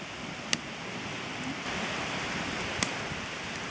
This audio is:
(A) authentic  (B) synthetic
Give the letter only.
A